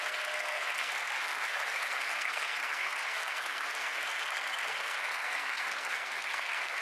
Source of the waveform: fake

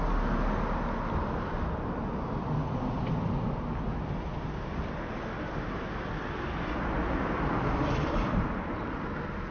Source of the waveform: real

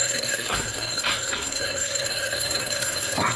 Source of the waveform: fake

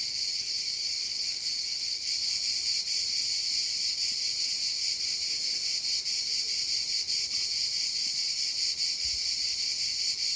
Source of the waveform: real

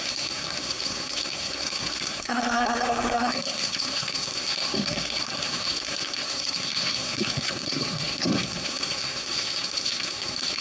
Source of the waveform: fake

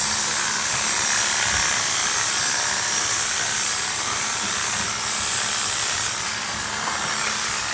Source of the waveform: real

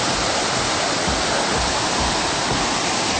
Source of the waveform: real